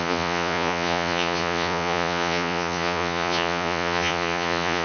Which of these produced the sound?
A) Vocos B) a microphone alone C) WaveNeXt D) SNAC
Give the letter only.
A